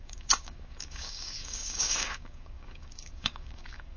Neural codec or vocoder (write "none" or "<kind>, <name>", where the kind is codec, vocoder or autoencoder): codec, DAC